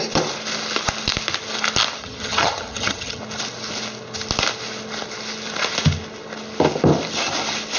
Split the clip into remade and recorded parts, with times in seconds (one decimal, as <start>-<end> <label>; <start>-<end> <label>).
0.0-2.0 recorded; 2.0-3.2 remade; 3.2-7.8 recorded